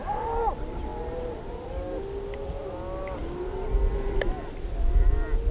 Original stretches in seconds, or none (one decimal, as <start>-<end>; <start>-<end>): 0.0-5.5